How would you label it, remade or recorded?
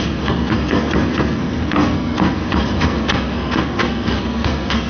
remade